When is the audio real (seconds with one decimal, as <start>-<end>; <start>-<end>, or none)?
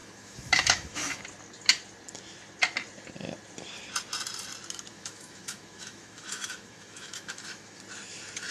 1.2-4.9; 7.8-8.5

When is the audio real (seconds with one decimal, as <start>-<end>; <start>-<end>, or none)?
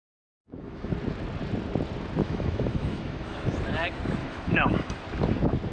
0.0-0.4; 0.9-2.2; 3.5-4.2; 4.9-5.7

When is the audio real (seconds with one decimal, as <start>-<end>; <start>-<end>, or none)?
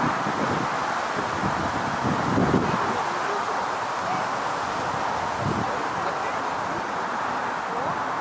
0.0-8.2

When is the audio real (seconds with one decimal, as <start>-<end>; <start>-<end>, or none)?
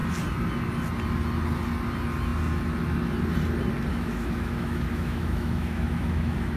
0.0-3.9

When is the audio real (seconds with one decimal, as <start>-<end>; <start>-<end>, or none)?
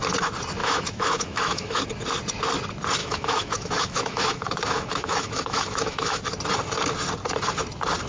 0.0-0.6; 1.8-3.0; 6.2-8.1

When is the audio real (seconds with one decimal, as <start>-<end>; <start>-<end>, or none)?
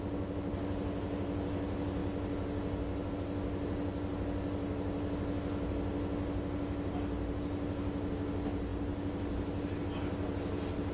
0.0-10.9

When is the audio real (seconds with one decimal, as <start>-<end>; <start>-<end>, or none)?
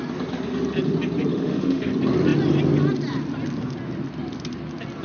0.0-1.3; 1.9-5.0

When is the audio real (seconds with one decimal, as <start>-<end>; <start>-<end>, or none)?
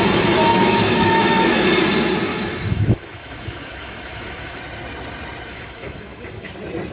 0.0-0.5; 1.7-2.3; 4.6-5.5; 6.5-6.9